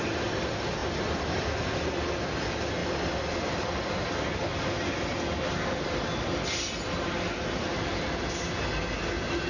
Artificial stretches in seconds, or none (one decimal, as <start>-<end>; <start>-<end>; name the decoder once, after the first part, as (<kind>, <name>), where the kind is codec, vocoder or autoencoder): none